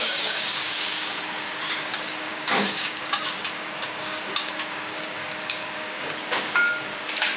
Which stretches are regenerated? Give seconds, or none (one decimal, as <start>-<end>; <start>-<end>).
0.0-7.4